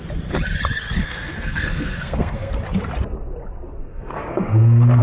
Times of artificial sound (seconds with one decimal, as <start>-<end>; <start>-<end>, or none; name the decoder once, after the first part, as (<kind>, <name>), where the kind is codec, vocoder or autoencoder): 1.0-2.5 (codec, SNAC); 3.8-5.0